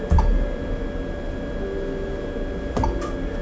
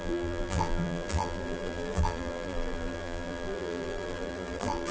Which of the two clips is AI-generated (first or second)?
second